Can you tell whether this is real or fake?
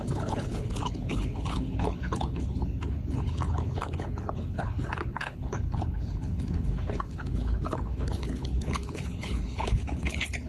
fake